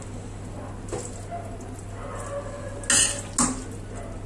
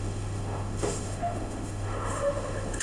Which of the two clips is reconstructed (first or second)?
second